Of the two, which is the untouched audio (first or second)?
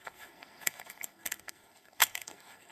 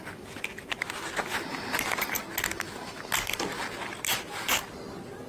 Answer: second